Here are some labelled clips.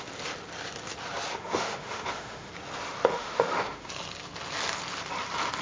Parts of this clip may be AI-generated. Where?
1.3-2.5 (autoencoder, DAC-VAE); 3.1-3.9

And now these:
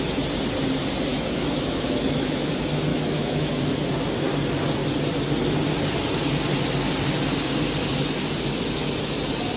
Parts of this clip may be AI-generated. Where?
1.1-2.5 (autoencoder, DAC-VAE); 2.9-3.5